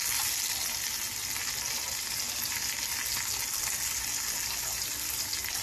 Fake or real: real